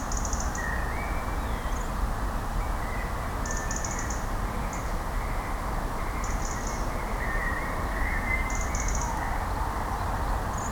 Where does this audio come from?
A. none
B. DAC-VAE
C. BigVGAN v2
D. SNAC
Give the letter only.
A